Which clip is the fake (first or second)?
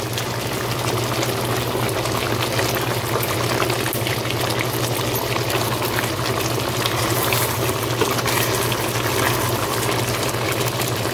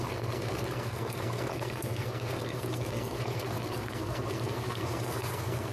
second